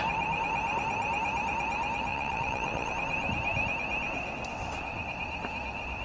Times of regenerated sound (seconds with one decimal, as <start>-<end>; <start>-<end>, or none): 2.1-2.9